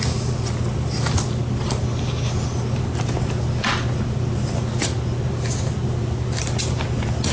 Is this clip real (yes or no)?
yes